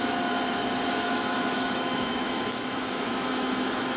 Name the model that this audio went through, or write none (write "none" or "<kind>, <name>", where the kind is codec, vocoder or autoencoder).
autoencoder, DAC-VAE